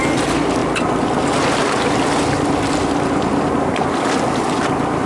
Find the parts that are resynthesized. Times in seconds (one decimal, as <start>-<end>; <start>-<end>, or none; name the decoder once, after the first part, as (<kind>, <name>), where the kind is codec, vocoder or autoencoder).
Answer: none